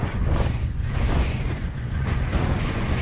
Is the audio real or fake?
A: fake